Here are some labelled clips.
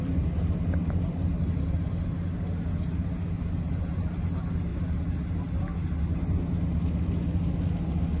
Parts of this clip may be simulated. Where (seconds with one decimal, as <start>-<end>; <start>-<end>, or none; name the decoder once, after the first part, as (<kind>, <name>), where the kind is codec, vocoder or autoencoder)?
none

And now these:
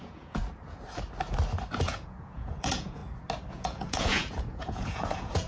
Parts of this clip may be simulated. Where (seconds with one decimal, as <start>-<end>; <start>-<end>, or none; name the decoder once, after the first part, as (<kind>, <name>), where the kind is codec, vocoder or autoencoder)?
0.0-0.4 (vocoder, Vocos); 1.8-3.0; 3.5-5.5

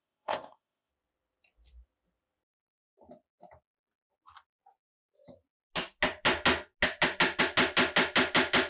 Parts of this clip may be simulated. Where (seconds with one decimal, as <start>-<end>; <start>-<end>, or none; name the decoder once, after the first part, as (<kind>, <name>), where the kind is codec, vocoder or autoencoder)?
0.0-0.9 (codec, ZipCodec)

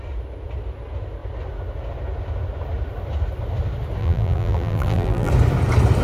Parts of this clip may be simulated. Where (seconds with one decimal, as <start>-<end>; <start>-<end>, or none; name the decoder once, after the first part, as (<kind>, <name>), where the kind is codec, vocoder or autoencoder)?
4.0-5.3 (vocoder, BigVGAN v2)

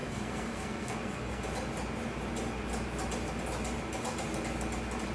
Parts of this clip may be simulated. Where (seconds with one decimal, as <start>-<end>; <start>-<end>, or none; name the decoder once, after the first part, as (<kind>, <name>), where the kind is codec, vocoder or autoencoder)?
0.0-1.4 (codec, SNAC)